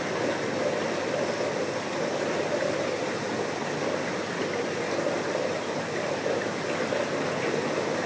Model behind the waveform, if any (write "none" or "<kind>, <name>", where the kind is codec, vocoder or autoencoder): none